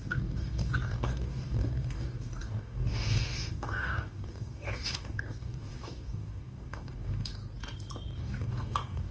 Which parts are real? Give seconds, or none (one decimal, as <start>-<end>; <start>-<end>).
7.4-8.2